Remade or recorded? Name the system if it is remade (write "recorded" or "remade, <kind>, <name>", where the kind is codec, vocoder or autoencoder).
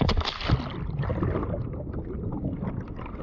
recorded